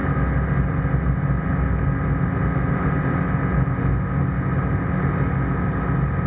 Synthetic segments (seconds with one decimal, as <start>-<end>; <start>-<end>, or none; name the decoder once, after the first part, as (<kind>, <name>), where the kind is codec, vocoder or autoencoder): none